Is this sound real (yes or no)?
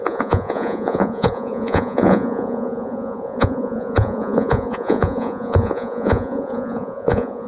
no